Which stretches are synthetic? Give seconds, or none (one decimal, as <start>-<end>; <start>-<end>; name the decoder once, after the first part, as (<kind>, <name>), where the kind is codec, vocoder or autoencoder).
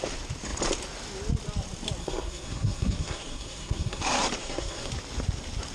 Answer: 2.0-4.0 (codec, SNAC); 4.4-4.9